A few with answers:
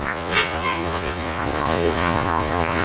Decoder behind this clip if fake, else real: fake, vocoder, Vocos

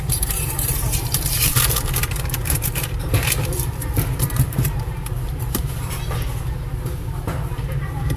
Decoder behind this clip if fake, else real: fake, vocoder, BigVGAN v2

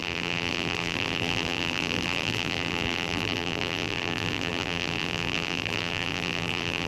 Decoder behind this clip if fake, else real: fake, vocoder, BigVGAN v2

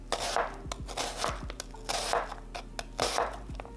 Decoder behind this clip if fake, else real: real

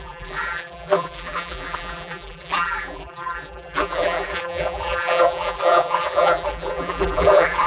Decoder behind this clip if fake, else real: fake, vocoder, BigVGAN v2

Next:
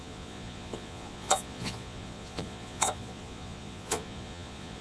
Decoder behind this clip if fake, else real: fake, vocoder, Vocos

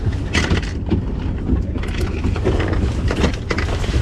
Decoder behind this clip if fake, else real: real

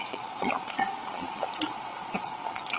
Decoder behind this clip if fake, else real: fake, vocoder, Vocos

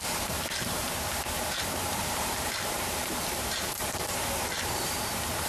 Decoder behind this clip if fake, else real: fake, vocoder, BigVGAN v2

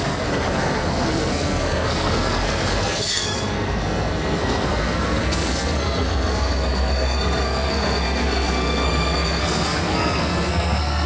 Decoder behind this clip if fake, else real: fake, codec, SNAC